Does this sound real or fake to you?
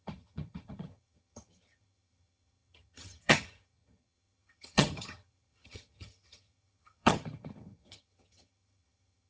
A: fake